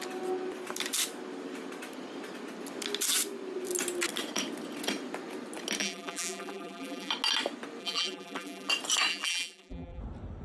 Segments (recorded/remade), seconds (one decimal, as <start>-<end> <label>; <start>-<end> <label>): 0.0-5.8 recorded; 5.8-7.1 remade; 7.1-7.8 recorded; 7.8-8.7 remade; 8.7-9.1 recorded; 9.1-10.0 remade; 10.0-10.4 recorded